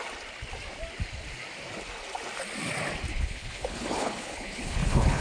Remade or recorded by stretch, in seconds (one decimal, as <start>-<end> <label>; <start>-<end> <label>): 0.0-3.1 recorded; 3.1-5.2 remade